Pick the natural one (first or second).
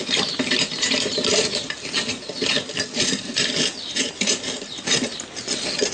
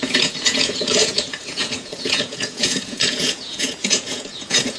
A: first